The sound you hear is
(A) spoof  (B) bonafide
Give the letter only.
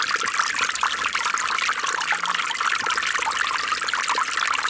B